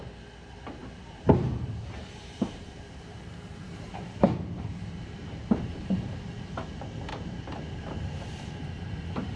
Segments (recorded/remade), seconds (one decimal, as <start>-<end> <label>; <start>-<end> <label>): 0.0-0.8 recorded; 0.8-5.8 remade; 5.8-7.1 recorded; 7.1-9.4 remade